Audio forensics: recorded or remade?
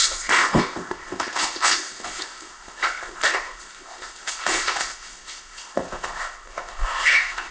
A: remade